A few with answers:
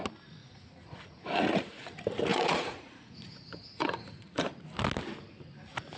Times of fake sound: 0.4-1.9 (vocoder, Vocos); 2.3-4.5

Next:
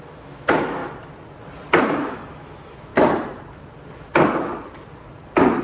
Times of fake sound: 0.0-0.8 (autoencoder, DAC-VAE); 1.8-2.9

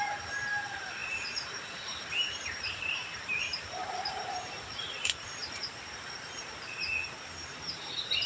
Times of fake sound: 1.0-5.8 (vocoder, BigVGAN v2); 7.4-8.3